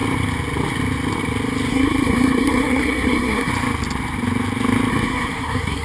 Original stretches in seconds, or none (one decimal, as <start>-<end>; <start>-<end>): 0.0-1.7; 3.5-4.9